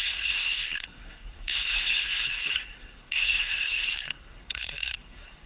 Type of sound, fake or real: fake